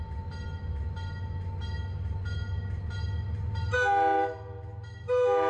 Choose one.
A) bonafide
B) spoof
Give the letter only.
A